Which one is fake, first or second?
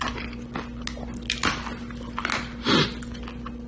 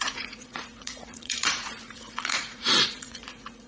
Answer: second